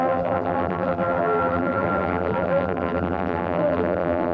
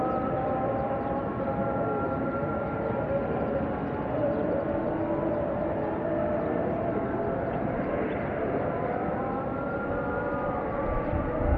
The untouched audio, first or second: second